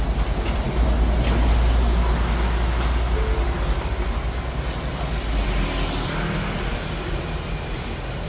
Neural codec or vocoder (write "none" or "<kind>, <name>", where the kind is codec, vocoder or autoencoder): none